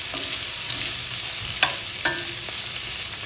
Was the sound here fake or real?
real